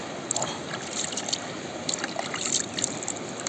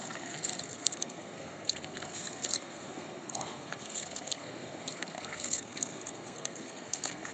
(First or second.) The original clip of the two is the first